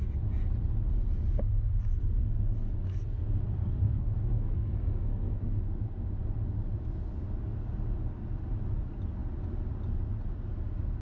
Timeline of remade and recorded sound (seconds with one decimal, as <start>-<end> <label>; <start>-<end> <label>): 0.0-3.6 recorded; 3.6-5.6 remade; 5.6-11.0 recorded